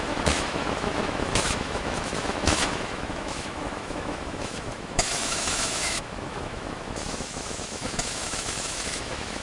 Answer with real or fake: fake